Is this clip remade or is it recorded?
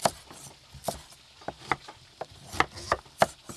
recorded